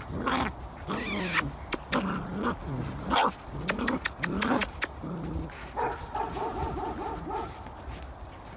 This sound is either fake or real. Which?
real